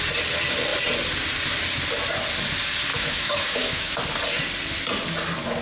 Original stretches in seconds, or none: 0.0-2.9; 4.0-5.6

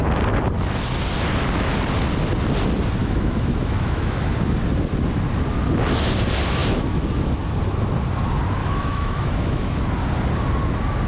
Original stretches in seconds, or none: 0.0-3.0; 4.3-6.6; 7.3-8.6; 9.8-11.1

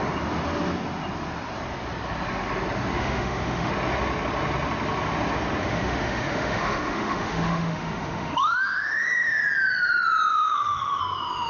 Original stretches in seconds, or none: 0.0-3.0; 3.7-5.6; 9.4-10.3; 11.0-11.5

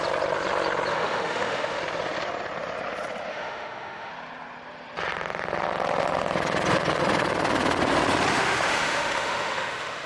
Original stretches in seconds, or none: 0.0-0.9; 1.8-3.3; 4.1-8.3

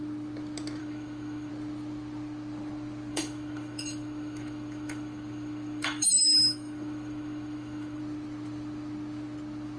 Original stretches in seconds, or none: 0.0-0.8; 1.5-3.1; 8.0-9.8

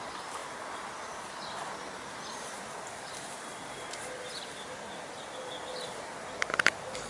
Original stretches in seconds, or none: 0.0-7.1

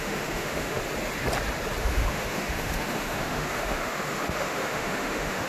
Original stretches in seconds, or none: 0.8-1.8